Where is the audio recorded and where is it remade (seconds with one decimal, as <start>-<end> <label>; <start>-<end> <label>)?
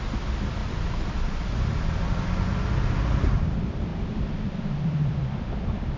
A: 0.0-0.6 recorded; 0.6-3.4 remade; 3.4-3.9 recorded; 3.9-6.0 remade